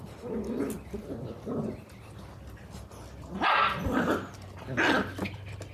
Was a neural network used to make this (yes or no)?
yes